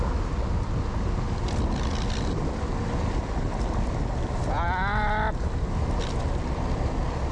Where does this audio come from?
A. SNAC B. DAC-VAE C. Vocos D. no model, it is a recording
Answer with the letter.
D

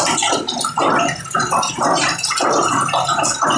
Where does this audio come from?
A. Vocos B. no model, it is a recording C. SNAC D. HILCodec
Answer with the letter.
B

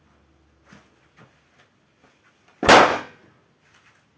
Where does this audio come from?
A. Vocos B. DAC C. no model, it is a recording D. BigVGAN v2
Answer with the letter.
C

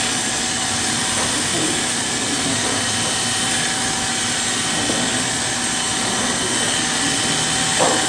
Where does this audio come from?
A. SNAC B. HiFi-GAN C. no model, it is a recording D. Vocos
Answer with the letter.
C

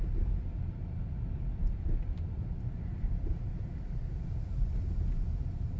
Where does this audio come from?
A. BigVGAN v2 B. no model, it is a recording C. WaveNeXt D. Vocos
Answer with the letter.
B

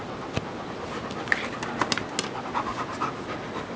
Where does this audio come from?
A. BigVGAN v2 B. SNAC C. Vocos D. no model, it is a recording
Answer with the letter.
D